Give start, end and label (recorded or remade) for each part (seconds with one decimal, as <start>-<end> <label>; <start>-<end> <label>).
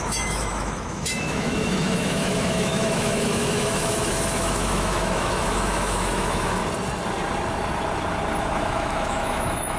0.0-6.6 remade; 6.6-8.4 recorded; 8.4-9.8 remade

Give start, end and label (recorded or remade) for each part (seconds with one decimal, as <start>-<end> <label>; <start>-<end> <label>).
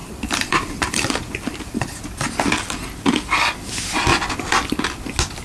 0.0-2.0 remade; 2.0-5.4 recorded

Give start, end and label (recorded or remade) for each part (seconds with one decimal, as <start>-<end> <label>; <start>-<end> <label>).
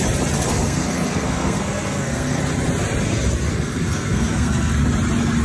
0.0-0.4 recorded; 0.4-2.4 remade; 2.4-3.5 recorded; 3.5-4.8 remade; 4.8-5.4 recorded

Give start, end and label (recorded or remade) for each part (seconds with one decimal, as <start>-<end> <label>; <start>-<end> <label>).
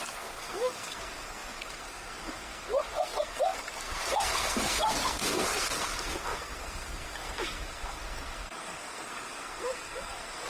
0.0-10.5 remade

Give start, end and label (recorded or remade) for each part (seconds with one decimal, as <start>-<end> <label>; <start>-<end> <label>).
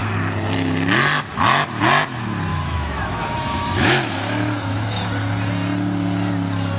0.0-2.5 recorded; 2.5-5.0 remade; 5.0-6.8 recorded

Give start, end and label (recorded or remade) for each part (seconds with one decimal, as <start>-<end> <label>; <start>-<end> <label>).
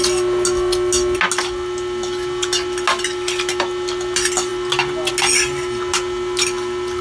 0.0-7.0 recorded